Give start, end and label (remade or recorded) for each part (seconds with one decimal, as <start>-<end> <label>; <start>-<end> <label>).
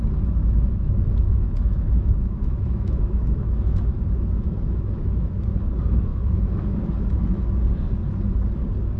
0.0-0.4 recorded; 0.4-5.5 remade; 5.5-6.1 recorded; 6.1-6.9 remade; 6.9-9.0 recorded